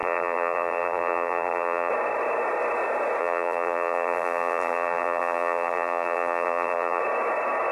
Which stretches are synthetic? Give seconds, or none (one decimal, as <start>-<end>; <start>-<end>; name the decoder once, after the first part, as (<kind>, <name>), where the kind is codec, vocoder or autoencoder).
0.0-1.9 (vocoder, BigVGAN v2); 3.2-7.0